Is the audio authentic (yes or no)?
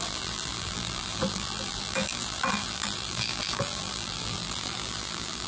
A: no